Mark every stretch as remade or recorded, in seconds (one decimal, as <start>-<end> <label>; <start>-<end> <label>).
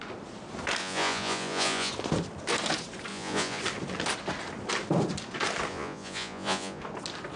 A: 0.0-0.8 recorded; 0.8-1.9 remade; 1.9-3.1 recorded; 3.1-3.6 remade; 3.6-5.7 recorded; 5.7-6.8 remade; 6.8-7.4 recorded